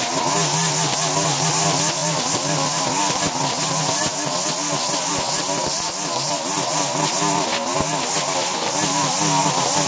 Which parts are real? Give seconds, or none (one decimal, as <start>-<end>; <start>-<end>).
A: 0.0-9.9